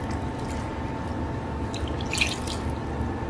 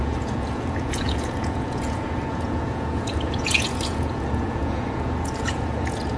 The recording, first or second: first